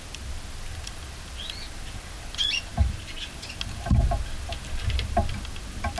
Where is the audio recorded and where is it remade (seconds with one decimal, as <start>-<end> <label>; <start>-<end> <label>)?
0.0-2.7 recorded; 2.7-3.3 remade; 3.3-6.0 recorded